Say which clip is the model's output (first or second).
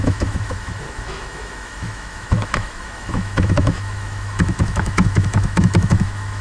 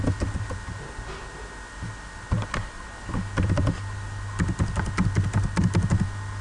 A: first